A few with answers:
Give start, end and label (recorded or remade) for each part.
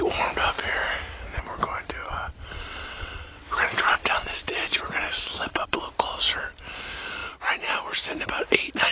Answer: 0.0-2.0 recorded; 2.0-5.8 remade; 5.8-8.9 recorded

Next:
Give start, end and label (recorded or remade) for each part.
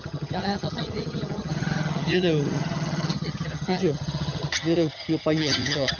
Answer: 0.0-6.0 remade